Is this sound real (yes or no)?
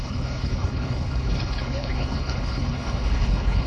no